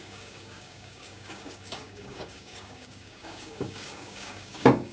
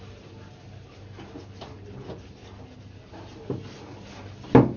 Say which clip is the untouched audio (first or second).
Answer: second